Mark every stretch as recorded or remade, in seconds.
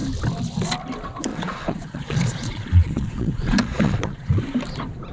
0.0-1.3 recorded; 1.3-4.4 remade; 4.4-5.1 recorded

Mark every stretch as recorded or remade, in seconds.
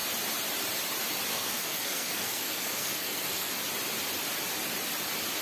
0.0-1.3 recorded; 1.3-3.5 remade; 3.5-5.4 recorded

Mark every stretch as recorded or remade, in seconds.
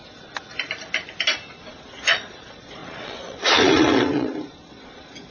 0.0-1.5 recorded; 1.5-5.3 remade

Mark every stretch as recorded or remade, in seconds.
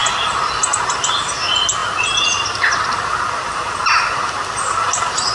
0.0-5.3 recorded